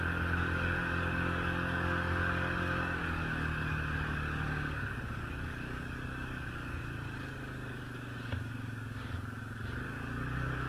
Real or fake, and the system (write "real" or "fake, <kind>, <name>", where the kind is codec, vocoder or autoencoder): fake, codec, DAC